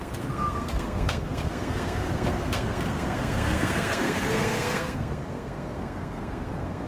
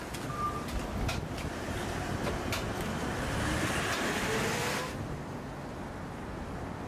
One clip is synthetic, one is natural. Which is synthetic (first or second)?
first